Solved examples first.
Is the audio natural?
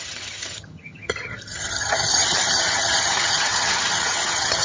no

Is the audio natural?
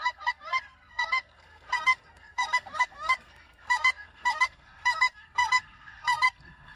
no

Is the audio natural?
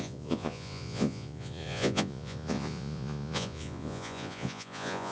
no